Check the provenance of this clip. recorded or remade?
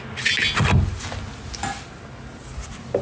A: recorded